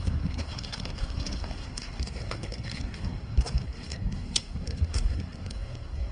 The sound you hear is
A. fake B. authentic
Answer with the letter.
A